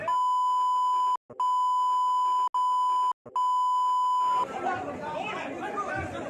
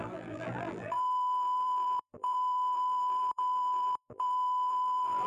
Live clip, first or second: first